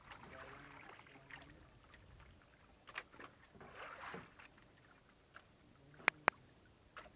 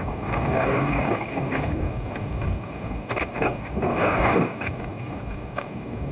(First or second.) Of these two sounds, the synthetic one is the second